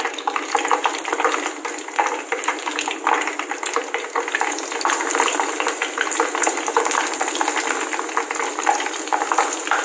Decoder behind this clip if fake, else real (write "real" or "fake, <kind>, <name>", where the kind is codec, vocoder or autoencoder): real